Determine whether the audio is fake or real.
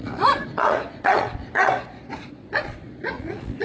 fake